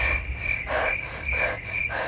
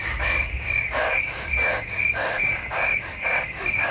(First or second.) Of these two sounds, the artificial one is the second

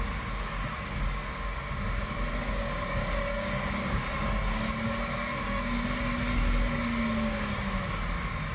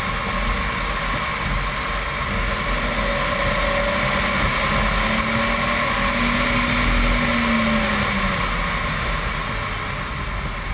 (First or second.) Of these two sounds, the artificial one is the first